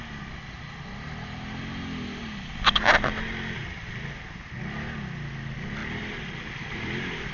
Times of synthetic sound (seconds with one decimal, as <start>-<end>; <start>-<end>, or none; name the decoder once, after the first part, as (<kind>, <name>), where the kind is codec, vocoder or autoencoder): 5.8-6.7 (vocoder, BigVGAN v2)